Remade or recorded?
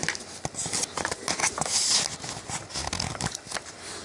recorded